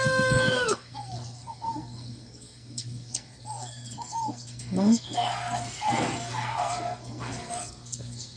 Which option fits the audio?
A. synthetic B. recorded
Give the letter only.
A